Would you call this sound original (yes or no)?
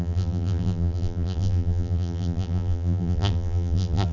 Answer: no